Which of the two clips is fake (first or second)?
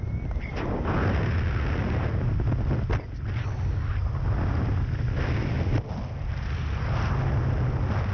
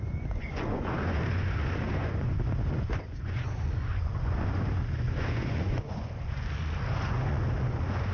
second